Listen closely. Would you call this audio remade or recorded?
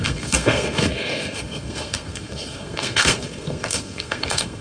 remade